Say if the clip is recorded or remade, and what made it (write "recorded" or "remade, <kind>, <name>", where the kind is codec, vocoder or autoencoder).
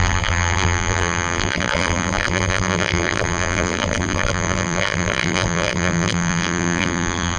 remade, vocoder, BigVGAN v2